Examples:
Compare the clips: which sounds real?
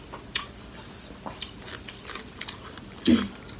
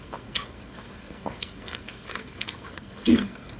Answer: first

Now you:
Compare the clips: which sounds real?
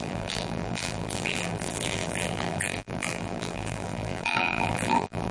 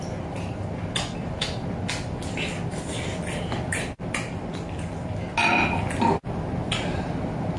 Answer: second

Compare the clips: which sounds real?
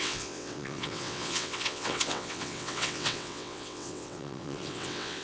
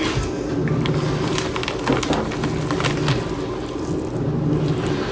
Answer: second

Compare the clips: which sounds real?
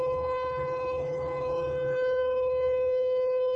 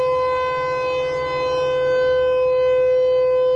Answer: second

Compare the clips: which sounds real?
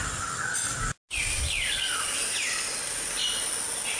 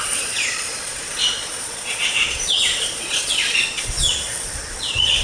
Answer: first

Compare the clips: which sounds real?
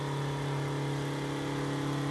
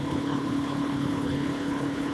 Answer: first